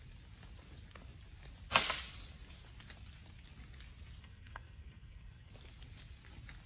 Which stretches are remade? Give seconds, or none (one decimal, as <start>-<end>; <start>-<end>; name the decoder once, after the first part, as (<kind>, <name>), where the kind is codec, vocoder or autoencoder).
4.2-5.5 (codec, SNAC)